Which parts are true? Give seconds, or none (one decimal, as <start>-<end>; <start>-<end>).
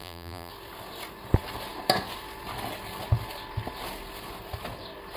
0.5-5.2